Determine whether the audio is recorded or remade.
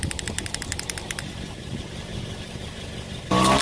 recorded